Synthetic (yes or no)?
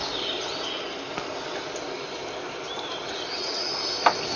no